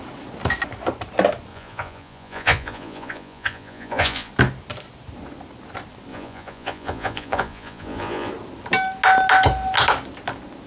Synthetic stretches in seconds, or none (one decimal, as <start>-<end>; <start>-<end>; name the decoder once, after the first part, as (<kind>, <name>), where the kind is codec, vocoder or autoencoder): 1.5-4.3 (vocoder, Vocos); 6.1-8.3